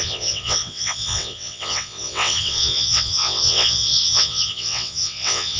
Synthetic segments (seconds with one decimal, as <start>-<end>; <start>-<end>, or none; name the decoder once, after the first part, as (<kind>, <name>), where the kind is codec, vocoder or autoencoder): 0.0-5.6 (vocoder, WaveNeXt)